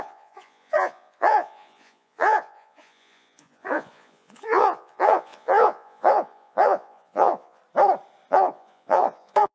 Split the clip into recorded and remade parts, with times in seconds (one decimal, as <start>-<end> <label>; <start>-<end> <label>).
0.0-7.6 remade; 7.6-8.3 recorded; 8.3-9.5 remade

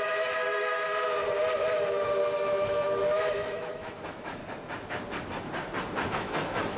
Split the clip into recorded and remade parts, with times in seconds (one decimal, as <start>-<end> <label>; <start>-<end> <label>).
0.0-0.9 remade; 0.9-1.7 recorded; 1.7-4.4 remade; 4.4-6.1 recorded; 6.1-6.8 remade

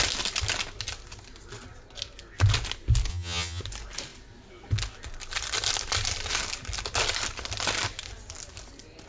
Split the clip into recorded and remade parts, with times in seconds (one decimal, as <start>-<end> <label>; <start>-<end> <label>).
0.0-3.1 recorded; 3.1-3.6 remade; 3.6-9.1 recorded

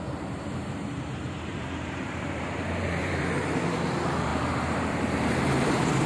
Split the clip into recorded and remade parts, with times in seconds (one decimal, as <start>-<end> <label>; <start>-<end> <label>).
0.0-6.1 remade

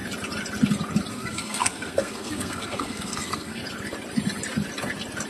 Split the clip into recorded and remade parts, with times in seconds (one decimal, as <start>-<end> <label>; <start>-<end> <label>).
0.0-1.1 recorded; 1.1-3.6 remade; 3.6-5.3 recorded

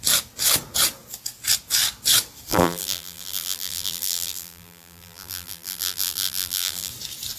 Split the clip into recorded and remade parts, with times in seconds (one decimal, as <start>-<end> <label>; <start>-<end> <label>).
0.0-2.5 recorded; 2.5-6.9 remade; 6.9-7.4 recorded

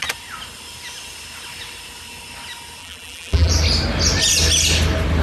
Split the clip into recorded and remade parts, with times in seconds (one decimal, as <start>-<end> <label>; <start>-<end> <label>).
0.0-2.8 recorded; 2.8-3.5 remade; 3.5-5.2 recorded

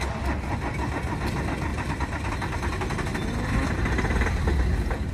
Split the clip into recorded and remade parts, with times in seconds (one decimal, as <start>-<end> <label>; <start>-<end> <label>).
0.0-1.7 recorded; 1.7-2.3 remade; 2.3-5.1 recorded